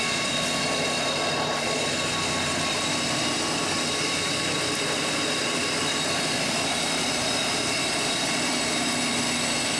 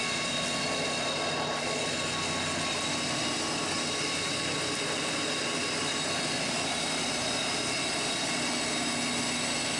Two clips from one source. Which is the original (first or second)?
second